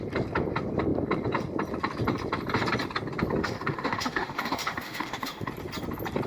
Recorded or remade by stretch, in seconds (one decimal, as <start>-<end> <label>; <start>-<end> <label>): 0.0-3.4 recorded; 3.4-5.5 remade; 5.5-6.3 recorded